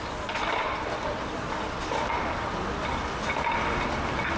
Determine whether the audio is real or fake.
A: real